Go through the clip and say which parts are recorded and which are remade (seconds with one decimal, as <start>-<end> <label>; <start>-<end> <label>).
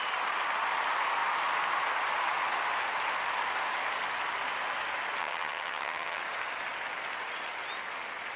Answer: 0.0-5.2 recorded; 5.2-6.2 remade; 6.2-8.4 recorded